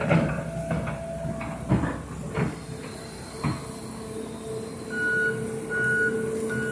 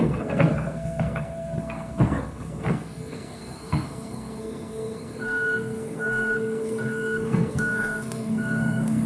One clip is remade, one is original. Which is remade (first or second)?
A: second